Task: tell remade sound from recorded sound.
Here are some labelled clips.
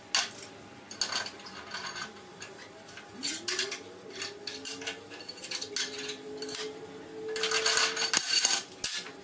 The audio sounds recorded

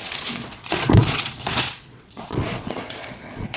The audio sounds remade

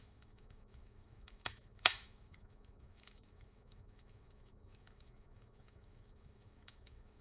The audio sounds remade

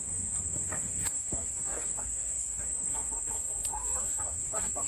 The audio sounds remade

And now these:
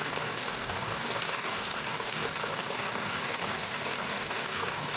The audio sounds remade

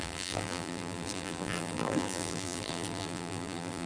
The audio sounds remade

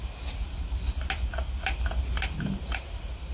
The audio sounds recorded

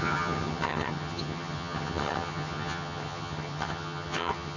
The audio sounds remade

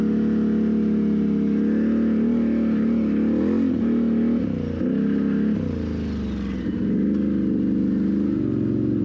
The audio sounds recorded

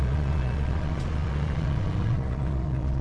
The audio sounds remade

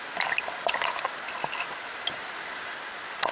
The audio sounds recorded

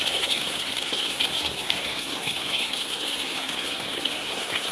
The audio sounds remade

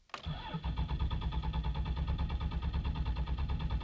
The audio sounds recorded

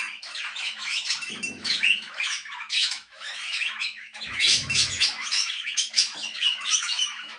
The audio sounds remade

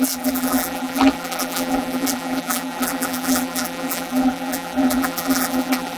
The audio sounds remade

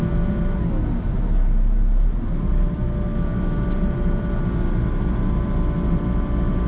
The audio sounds recorded